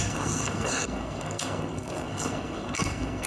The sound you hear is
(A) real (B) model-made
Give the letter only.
B